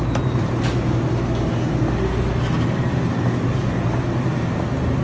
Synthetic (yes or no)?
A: no